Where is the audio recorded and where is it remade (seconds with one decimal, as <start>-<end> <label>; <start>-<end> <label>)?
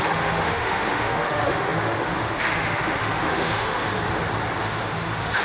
0.0-3.9 remade; 3.9-4.6 recorded; 4.6-5.4 remade